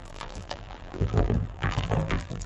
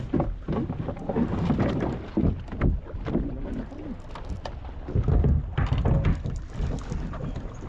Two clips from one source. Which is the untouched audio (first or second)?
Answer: second